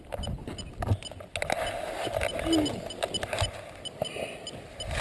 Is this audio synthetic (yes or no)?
no